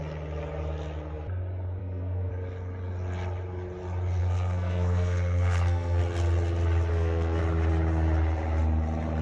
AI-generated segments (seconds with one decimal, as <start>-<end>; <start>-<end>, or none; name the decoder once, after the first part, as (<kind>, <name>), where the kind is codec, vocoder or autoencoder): 1.8-2.3 (codec, SNAC); 4.2-6.0; 6.9-7.4